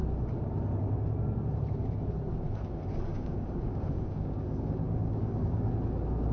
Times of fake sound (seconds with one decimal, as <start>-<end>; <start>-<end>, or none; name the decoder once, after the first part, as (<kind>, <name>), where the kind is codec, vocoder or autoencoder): 3.1-5.7 (codec, DAC)